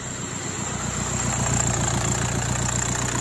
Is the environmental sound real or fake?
real